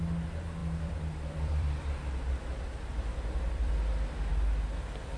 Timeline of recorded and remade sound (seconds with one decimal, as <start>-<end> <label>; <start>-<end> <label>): 0.0-0.6 recorded; 0.6-3.7 remade; 3.7-5.2 recorded